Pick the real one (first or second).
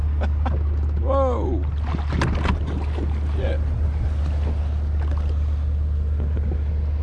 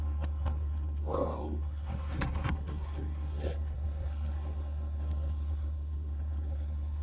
first